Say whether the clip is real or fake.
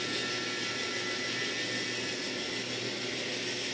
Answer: real